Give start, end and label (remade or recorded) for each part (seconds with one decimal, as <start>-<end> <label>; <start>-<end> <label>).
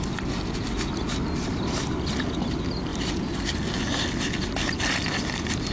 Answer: 0.0-2.9 recorded; 2.9-3.6 remade; 3.6-5.7 recorded